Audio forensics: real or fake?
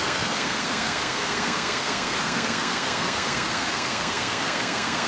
fake